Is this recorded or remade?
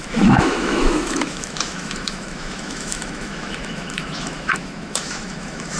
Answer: remade